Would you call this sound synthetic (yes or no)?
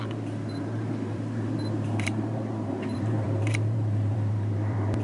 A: yes